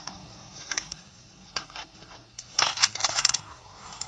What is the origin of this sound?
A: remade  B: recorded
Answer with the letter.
A